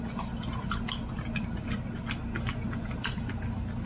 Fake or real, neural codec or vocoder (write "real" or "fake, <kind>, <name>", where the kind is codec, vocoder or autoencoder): real